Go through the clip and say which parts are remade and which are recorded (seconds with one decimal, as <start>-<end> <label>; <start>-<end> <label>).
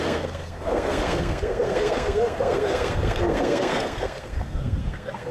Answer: 0.0-5.3 remade